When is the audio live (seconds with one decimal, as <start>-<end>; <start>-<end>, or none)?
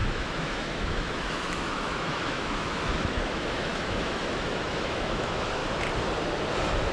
5.6-6.9